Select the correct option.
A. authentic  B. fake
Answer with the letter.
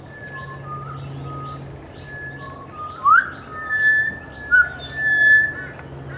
A